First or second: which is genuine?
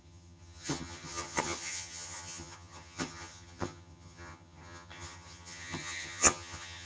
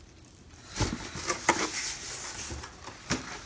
second